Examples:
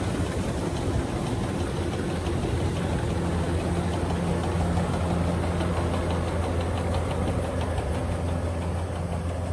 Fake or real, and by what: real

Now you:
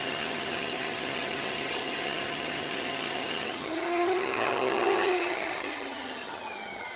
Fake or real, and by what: fake, vocoder, HiFi-GAN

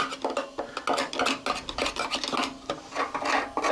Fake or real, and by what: real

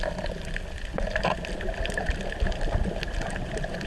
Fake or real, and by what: real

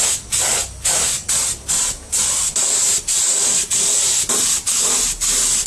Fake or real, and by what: real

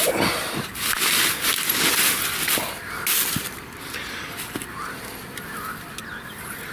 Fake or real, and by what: real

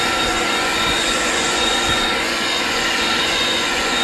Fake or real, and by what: fake, vocoder, Vocos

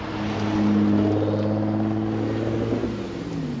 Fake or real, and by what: real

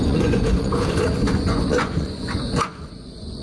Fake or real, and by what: fake, vocoder, Vocos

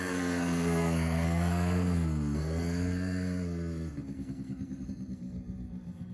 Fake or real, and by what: fake, codec, SNAC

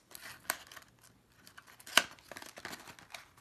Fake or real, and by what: real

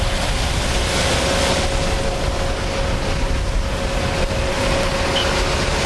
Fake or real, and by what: real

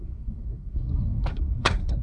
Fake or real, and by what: fake, codec, SNAC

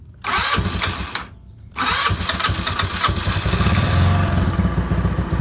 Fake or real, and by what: real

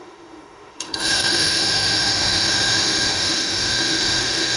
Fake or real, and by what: fake, autoencoder, DAC-VAE